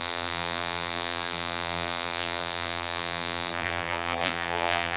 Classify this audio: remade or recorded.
remade